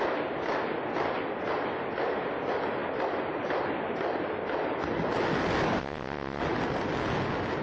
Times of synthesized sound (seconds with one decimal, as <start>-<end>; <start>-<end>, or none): 5.8-6.4